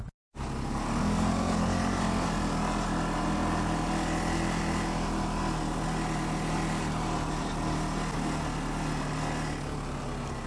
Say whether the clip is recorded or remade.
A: recorded